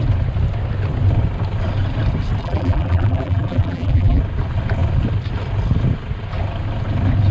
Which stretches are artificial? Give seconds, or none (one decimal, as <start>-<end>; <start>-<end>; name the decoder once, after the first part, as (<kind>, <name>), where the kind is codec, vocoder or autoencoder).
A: 2.4-4.2 (vocoder, BigVGAN v2)